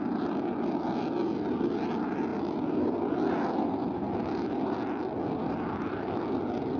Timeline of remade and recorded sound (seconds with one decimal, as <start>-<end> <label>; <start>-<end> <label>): 0.0-6.8 recorded